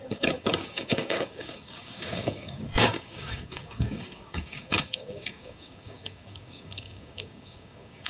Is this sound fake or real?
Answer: fake